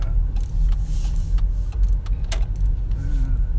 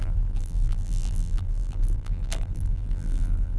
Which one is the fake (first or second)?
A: second